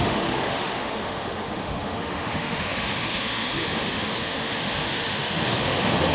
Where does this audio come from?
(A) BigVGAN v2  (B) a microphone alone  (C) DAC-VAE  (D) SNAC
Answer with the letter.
C